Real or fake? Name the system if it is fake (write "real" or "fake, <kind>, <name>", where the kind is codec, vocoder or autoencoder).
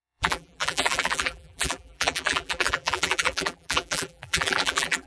fake, vocoder, BigVGAN v2